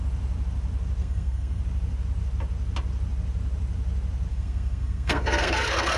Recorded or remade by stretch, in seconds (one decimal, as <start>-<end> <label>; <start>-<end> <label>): 0.0-1.0 recorded; 1.0-1.6 remade; 1.6-4.3 recorded; 4.3-6.0 remade